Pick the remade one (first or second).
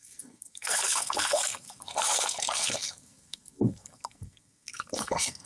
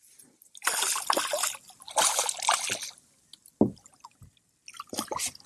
first